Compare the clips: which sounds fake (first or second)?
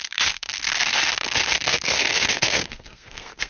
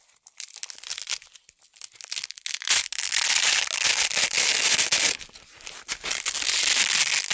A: first